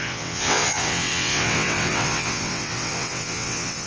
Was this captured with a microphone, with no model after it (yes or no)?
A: no